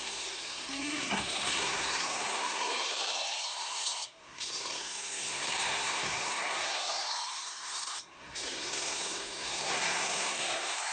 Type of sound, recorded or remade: remade